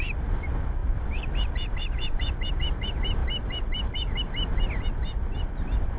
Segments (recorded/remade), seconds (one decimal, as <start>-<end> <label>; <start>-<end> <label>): 0.0-6.0 recorded